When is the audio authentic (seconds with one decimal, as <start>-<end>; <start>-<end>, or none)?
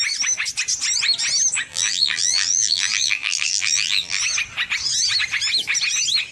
0.0-1.7; 4.2-6.3